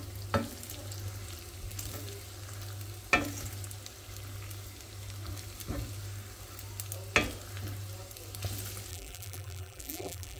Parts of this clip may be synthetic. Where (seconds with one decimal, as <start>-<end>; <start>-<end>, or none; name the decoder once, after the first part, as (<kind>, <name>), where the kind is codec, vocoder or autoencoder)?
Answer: 8.9-10.4 (vocoder, BigVGAN v2)